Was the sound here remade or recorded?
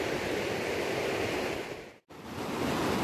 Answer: recorded